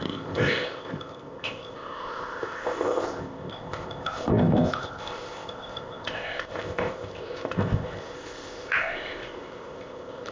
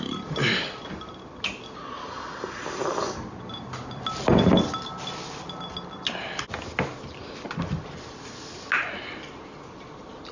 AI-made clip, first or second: first